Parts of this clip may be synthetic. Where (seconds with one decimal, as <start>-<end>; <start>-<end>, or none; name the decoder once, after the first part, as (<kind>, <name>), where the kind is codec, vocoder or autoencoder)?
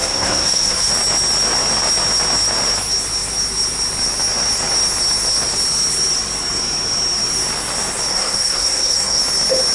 0.0-0.9 (codec, SNAC); 8.1-9.2